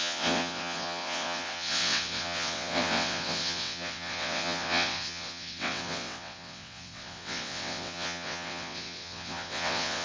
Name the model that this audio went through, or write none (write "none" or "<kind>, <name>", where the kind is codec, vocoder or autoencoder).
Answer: vocoder, WaveNeXt